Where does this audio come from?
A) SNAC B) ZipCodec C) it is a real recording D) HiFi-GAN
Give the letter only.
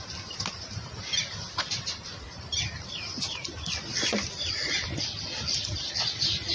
C